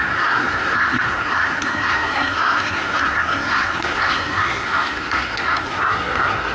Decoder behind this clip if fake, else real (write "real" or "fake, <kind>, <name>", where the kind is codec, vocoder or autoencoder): fake, codec, SNAC